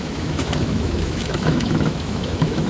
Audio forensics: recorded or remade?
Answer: remade